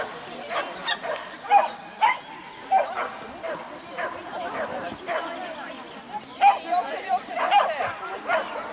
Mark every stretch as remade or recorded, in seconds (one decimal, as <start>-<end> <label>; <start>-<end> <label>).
0.0-6.8 recorded; 6.8-7.8 remade; 7.8-8.7 recorded